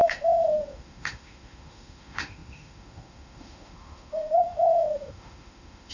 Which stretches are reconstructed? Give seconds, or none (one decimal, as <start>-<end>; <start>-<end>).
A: 0.0-5.9